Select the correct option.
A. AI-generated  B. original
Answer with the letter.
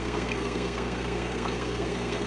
A